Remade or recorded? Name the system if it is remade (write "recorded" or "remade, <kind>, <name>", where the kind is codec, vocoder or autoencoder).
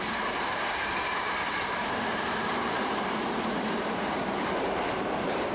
remade, vocoder, BigVGAN v2